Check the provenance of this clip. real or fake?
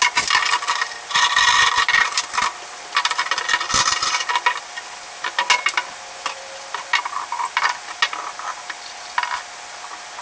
real